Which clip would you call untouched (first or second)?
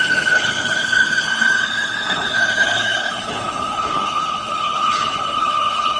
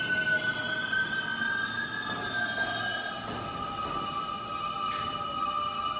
second